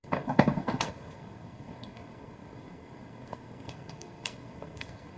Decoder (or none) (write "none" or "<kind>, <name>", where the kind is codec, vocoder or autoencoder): codec, SNAC